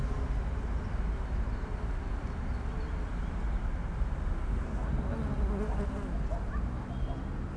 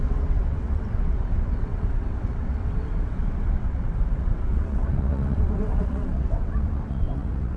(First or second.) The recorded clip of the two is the first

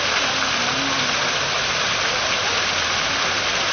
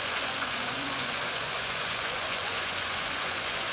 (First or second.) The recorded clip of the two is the first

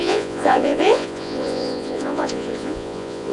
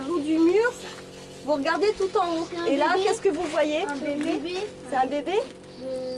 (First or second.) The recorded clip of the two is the second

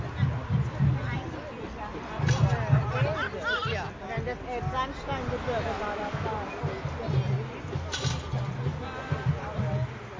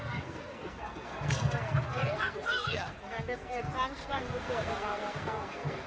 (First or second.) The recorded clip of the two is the first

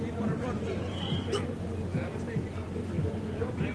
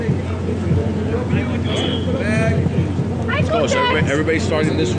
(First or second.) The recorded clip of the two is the second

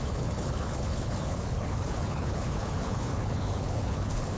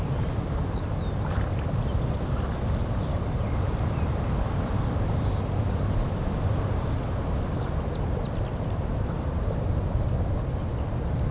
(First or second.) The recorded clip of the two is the second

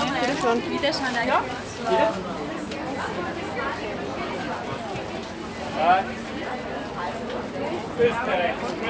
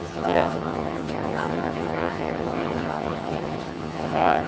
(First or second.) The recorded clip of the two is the first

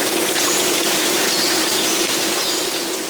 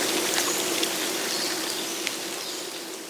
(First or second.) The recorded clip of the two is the second